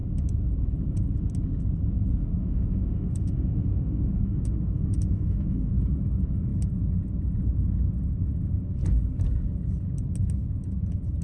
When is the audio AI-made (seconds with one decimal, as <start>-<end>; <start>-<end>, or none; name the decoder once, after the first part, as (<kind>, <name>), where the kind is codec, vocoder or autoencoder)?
2.2-5.7 (autoencoder, DAC-VAE)